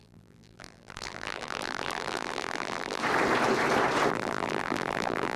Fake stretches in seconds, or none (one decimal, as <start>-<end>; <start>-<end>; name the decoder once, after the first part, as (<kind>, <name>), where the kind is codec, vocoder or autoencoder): 0.0-3.0 (vocoder, BigVGAN v2); 4.1-5.4